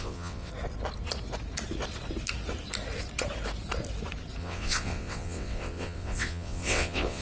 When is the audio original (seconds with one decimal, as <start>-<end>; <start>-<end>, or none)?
0.5-4.4